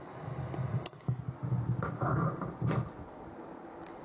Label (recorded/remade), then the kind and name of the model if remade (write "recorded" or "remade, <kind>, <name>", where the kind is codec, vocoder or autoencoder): recorded